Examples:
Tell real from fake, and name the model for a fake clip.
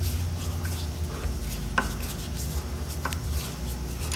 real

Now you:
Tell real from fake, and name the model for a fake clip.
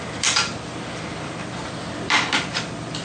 fake, vocoder, BigVGAN v2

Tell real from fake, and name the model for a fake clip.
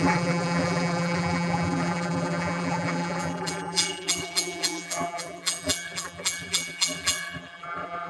fake, vocoder, BigVGAN v2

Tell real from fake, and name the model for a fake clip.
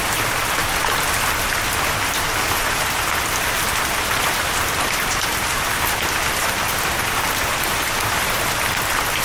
real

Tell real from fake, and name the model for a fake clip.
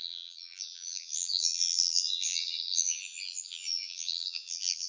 fake, vocoder, BigVGAN v2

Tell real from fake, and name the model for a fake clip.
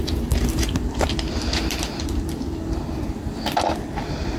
fake, vocoder, BigVGAN v2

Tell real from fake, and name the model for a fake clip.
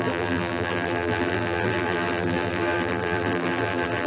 fake, vocoder, BigVGAN v2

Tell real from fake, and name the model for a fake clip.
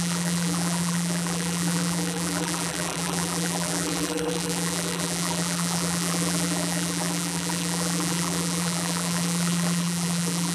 fake, vocoder, BigVGAN v2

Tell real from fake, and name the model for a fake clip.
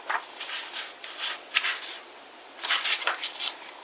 fake, vocoder, BigVGAN v2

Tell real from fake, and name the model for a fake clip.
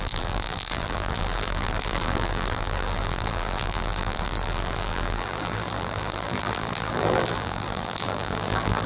fake, vocoder, BigVGAN v2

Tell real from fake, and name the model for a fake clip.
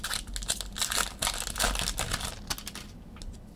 real